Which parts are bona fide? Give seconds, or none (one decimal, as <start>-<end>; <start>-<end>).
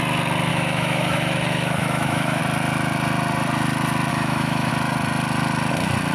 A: 0.0-0.5; 2.4-4.1; 4.7-6.1